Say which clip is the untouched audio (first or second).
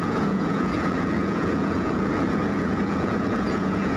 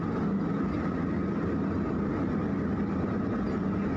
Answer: second